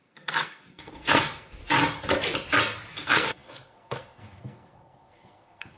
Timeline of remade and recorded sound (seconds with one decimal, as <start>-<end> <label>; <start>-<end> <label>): 0.0-1.6 remade; 1.6-2.9 recorded; 2.9-5.8 remade